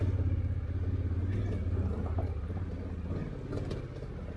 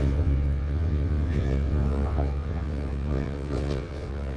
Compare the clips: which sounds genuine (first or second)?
first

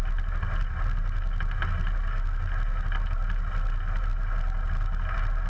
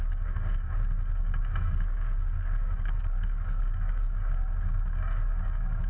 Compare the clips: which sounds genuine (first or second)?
first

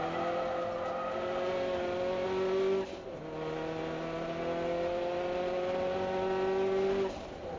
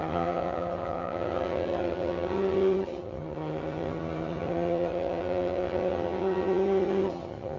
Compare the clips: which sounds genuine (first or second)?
first